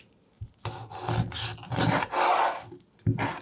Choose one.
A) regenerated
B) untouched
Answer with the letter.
B